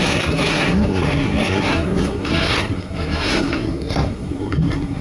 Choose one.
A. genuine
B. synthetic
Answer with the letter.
B